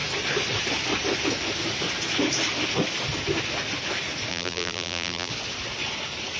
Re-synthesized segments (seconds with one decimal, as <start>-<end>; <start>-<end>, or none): 4.3-5.3